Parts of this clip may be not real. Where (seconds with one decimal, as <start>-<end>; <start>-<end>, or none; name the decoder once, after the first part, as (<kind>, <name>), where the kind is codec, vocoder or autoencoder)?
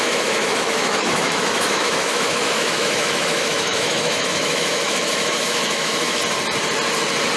0.0-6.2 (autoencoder, DAC-VAE)